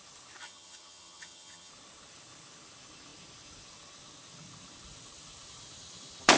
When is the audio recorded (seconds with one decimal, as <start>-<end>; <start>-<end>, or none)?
0.0-0.4; 1.7-6.4